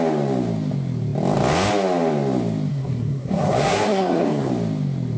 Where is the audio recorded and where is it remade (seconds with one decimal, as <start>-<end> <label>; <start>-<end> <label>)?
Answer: 0.0-2.7 recorded; 2.7-4.5 remade; 4.5-5.2 recorded